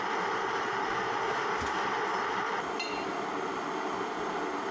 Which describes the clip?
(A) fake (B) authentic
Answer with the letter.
B